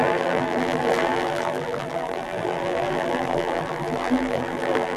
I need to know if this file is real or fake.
fake